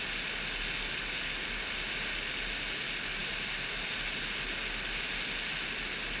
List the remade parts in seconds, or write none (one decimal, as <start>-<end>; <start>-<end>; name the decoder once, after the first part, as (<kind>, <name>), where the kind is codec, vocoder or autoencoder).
none